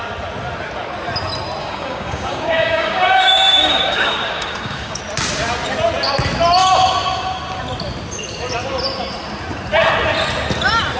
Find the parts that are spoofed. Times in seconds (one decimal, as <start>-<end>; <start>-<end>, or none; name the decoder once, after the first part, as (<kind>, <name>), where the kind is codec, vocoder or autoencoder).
1.6-5.0 (codec, DAC)